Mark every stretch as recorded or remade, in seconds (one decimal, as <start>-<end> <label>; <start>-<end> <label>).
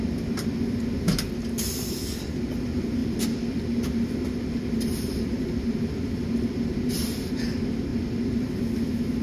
0.0-3.0 recorded; 3.0-5.8 remade; 5.8-9.2 recorded